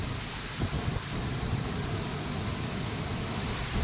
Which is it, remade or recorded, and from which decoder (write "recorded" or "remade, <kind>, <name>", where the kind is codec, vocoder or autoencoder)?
recorded